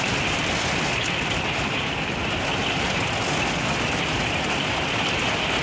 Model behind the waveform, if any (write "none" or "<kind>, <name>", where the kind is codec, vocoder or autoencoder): none